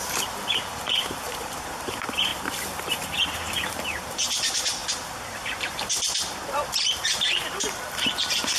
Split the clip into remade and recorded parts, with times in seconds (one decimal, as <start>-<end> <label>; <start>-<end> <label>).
0.0-2.3 remade; 2.3-3.3 recorded; 3.3-4.8 remade; 4.8-5.3 recorded; 5.3-8.6 remade